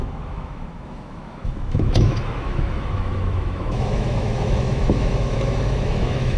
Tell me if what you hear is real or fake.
fake